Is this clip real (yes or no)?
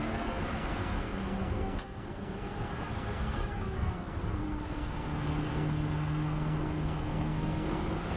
no